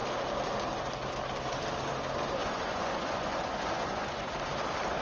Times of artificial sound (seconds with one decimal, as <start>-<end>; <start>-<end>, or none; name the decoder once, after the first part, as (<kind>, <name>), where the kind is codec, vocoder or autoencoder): 2.4-4.3 (vocoder, Vocos)